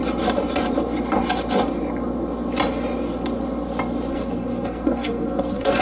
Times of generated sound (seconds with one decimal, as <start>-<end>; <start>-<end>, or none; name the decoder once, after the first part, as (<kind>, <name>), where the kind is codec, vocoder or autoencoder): 4.1-5.8 (codec, SNAC)